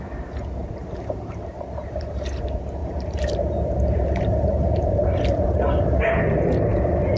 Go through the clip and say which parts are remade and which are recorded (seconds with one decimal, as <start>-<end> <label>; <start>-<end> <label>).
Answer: 0.0-0.6 recorded; 0.6-2.4 remade; 2.4-2.8 recorded; 2.8-6.0 remade; 6.0-7.2 recorded